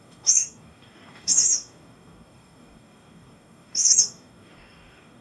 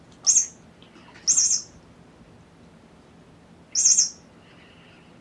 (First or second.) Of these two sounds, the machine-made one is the first